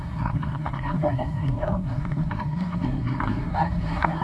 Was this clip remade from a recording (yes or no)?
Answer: yes